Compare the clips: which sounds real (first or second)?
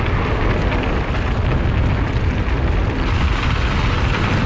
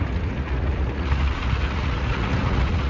first